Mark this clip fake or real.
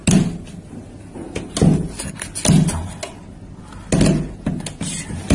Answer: real